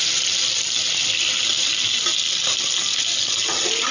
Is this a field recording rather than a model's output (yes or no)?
yes